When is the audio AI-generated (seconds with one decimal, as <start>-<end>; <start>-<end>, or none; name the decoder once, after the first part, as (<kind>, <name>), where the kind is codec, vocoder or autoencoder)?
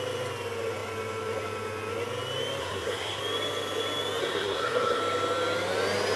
2.6-3.2 (codec, SNAC); 4.2-5.0